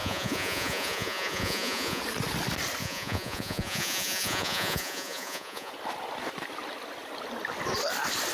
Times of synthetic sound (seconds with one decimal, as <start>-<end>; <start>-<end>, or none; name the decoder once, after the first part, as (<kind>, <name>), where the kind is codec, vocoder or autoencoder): 0.0-2.0 (vocoder, Vocos); 2.8-5.7